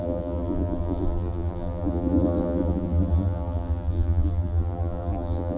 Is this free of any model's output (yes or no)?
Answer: no